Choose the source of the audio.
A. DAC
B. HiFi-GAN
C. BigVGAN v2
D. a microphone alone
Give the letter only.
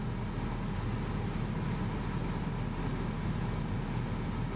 D